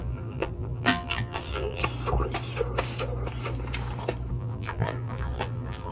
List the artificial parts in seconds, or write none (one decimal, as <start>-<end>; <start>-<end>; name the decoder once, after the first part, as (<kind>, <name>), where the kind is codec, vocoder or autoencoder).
0.0-1.8 (vocoder, BigVGAN v2); 4.3-5.9